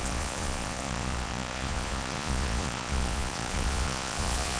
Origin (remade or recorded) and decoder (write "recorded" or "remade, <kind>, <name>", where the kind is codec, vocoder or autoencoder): remade, vocoder, Vocos